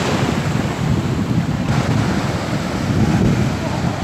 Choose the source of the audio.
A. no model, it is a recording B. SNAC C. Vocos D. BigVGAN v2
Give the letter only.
A